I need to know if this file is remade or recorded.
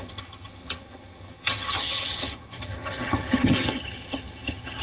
remade